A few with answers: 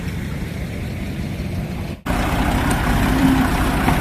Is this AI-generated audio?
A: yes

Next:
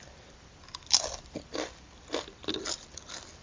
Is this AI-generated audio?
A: yes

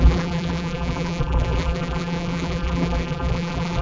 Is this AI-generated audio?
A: yes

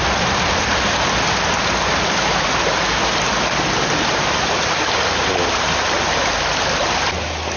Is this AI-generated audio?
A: no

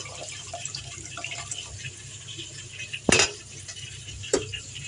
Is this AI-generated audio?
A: yes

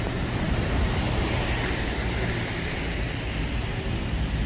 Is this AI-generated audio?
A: no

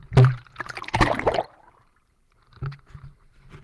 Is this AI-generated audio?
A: yes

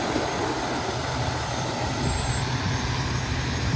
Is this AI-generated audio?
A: no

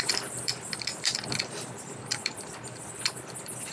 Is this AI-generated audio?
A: yes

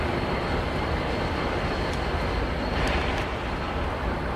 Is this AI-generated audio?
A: yes